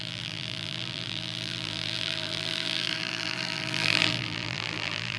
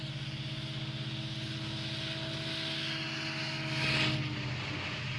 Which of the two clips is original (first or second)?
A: second